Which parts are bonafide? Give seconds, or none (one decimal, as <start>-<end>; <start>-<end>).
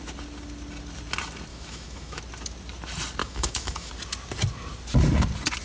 0.0-1.5; 2.2-3.2; 3.9-5.6